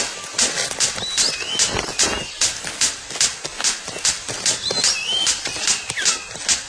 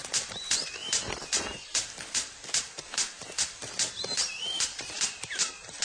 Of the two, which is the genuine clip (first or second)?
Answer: first